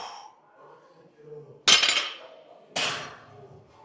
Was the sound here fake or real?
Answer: real